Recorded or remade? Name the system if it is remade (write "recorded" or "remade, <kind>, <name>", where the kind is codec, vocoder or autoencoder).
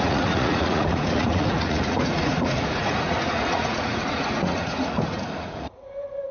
remade, vocoder, Vocos